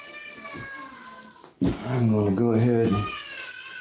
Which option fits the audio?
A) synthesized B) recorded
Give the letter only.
B